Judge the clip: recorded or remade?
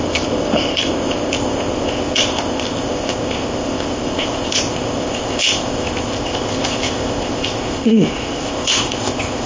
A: remade